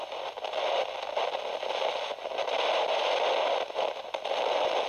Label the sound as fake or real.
real